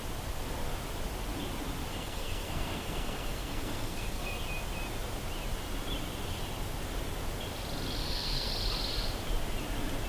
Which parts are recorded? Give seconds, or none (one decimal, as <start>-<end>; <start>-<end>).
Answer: 0.0-1.9; 4.4-8.0; 8.5-10.1